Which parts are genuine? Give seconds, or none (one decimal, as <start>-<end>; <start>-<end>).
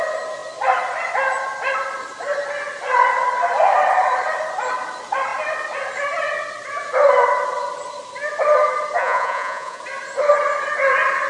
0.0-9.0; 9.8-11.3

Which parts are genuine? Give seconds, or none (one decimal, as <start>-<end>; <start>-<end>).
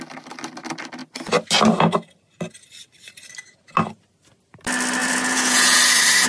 0.0-5.0; 5.8-6.3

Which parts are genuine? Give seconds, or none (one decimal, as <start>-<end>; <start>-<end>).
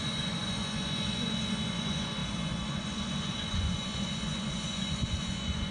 none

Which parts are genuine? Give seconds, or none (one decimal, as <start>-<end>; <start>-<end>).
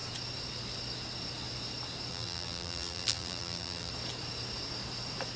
0.0-2.1; 3.9-5.4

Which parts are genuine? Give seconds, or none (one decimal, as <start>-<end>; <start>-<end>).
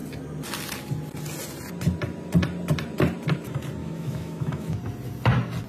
0.0-3.8; 4.8-5.7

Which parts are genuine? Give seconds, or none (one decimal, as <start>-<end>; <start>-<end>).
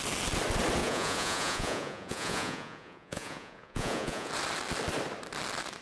0.0-0.8; 4.3-5.8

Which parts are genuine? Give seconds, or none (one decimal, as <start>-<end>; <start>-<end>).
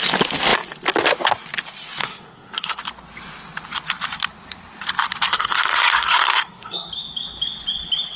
0.0-2.0; 2.8-5.3; 6.9-8.2